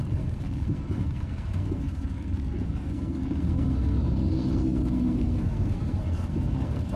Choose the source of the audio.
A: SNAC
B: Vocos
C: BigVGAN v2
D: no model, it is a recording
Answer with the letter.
A